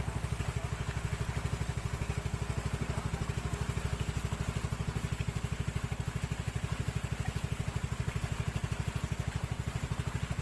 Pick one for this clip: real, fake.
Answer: real